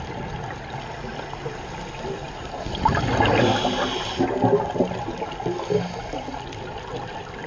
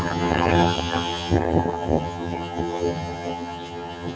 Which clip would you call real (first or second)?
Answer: first